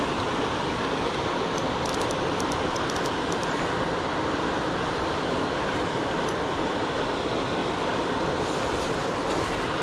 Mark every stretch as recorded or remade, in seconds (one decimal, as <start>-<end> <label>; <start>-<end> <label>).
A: 0.0-3.4 recorded; 3.4-6.1 remade; 6.1-9.8 recorded